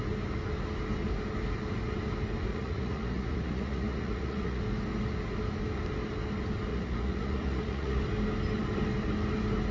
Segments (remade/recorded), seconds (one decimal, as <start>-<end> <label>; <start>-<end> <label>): 0.0-2.5 recorded; 2.5-4.6 remade; 4.6-6.7 recorded; 6.7-8.0 remade; 8.0-9.7 recorded

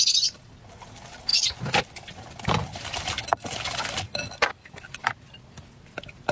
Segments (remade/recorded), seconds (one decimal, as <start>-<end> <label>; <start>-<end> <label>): 0.0-6.3 recorded

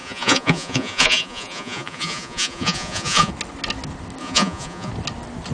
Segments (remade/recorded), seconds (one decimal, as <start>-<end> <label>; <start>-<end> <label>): 0.0-3.3 remade; 3.3-4.2 recorded; 4.2-4.9 remade; 4.9-5.5 recorded